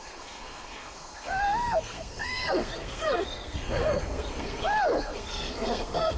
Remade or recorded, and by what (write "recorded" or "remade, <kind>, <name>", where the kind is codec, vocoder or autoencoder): remade, codec, SNAC